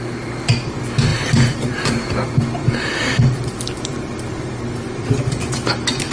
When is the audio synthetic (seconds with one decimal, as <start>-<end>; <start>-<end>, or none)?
1.1-1.8; 2.6-5.4